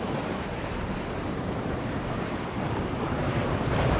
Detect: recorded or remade remade